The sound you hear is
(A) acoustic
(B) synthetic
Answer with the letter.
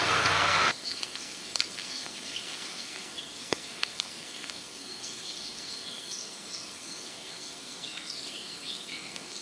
B